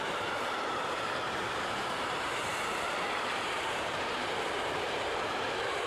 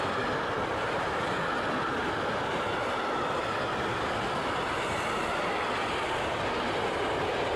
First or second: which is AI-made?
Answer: first